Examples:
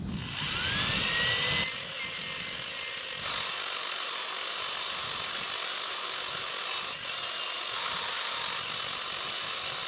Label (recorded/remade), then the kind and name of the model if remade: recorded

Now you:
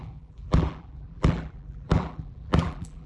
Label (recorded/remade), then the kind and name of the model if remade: remade, vocoder, BigVGAN v2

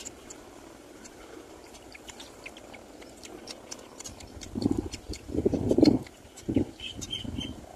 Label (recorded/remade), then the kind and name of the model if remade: remade, vocoder, BigVGAN v2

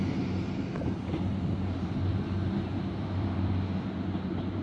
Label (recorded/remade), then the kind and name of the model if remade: remade, vocoder, BigVGAN v2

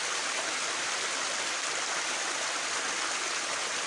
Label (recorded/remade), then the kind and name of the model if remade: recorded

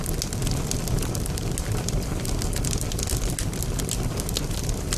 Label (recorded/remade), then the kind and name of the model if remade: recorded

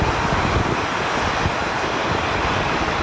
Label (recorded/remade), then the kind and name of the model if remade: recorded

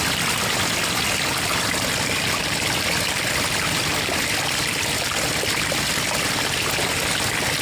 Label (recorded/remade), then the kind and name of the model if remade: recorded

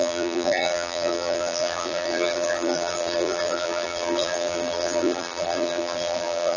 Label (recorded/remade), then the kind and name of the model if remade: remade, vocoder, BigVGAN v2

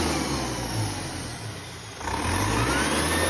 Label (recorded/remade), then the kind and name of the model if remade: recorded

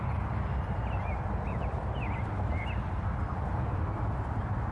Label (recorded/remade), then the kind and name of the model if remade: recorded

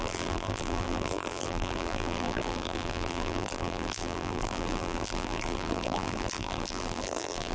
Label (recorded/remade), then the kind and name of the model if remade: remade, vocoder, BigVGAN v2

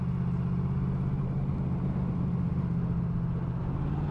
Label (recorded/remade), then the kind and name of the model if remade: recorded